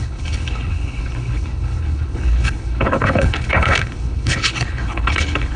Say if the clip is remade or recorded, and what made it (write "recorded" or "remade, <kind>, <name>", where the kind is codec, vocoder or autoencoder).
remade, codec, HILCodec